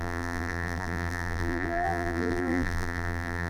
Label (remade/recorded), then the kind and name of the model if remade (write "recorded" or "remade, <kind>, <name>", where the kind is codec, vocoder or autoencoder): remade, vocoder, BigVGAN v2